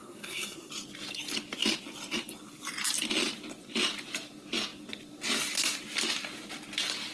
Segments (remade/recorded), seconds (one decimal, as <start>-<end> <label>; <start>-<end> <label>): 0.0-0.7 remade; 0.7-7.1 recorded